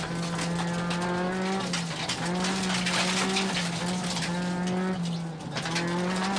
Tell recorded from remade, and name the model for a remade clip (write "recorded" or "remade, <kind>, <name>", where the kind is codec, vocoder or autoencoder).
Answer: recorded